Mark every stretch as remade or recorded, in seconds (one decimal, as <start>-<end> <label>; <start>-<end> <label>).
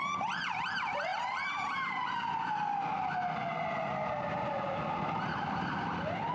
0.0-1.1 recorded; 1.1-4.9 remade; 4.9-6.3 recorded